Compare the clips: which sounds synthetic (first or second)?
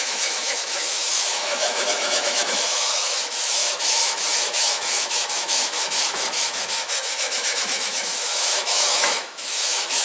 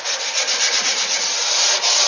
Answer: first